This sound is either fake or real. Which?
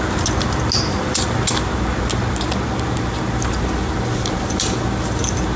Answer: real